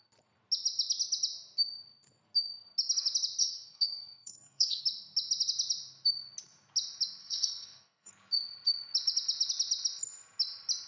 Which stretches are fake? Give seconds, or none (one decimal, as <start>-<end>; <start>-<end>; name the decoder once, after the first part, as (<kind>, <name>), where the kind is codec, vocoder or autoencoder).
3.4-4.8 (codec, SNAC); 7.2-8.1